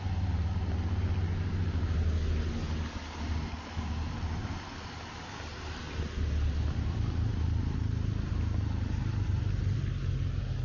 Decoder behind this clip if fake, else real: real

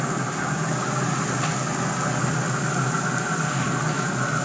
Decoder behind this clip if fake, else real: real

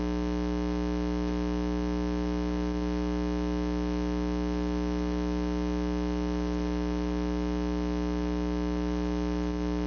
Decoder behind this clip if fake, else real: real